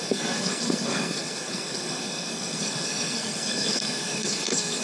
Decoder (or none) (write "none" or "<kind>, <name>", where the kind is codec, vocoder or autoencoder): codec, SNAC